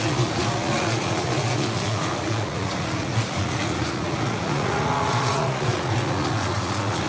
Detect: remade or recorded remade